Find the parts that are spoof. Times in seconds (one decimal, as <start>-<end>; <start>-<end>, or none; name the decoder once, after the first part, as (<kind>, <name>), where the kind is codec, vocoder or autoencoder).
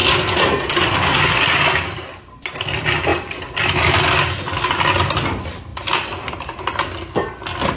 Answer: none